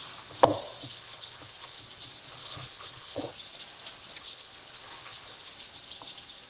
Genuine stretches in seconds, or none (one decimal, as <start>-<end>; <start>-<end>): 0.0-0.9; 1.8-2.4; 3.3-4.2; 5.5-6.5